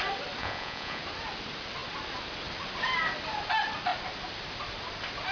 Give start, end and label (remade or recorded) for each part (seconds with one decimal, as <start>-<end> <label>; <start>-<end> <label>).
0.0-0.4 recorded; 0.4-1.0 remade; 1.0-5.3 recorded